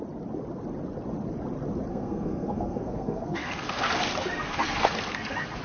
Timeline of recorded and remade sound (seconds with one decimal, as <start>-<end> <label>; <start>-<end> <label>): 0.0-1.9 recorded; 1.9-5.6 remade